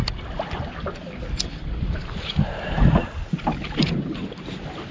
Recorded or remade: recorded